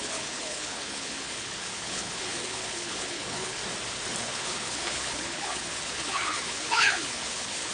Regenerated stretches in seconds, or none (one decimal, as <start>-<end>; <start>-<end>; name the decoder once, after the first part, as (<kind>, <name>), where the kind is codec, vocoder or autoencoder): 0.0-3.6 (codec, HILCodec); 4.2-7.7